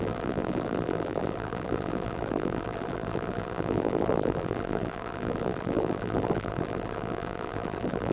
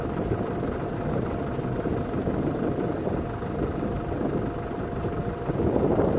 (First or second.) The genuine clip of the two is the second